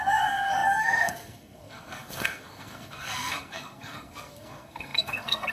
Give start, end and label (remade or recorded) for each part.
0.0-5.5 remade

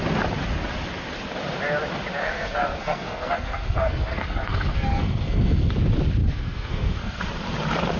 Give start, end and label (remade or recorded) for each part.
0.0-2.2 recorded; 2.2-5.7 remade; 5.7-6.2 recorded; 6.2-7.2 remade; 7.2-8.0 recorded